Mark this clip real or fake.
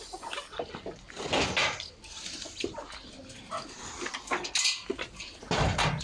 real